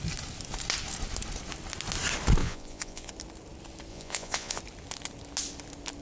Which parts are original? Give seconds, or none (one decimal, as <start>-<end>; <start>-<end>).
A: 0.0-2.4; 3.1-3.9; 4.6-6.0